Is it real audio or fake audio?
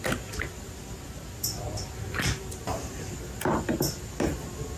real